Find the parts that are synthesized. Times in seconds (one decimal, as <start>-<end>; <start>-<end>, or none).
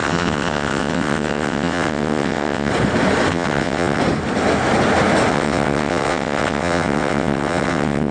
0.0-2.7; 3.3-4.0; 5.3-8.1